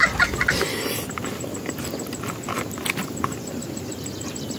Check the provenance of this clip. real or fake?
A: real